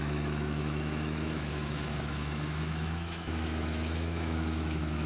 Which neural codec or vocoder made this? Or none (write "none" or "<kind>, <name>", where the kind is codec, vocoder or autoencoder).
autoencoder, DAC-VAE